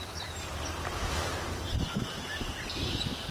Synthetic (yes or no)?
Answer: yes